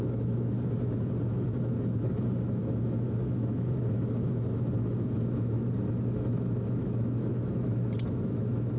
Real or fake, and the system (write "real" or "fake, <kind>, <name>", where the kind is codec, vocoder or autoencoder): fake, autoencoder, DAC-VAE